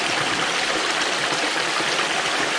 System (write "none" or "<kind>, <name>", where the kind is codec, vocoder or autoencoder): none